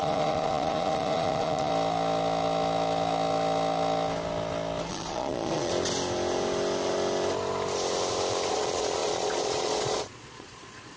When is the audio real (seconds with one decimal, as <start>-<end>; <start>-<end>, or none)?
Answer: 1.7-4.9; 5.7-8.5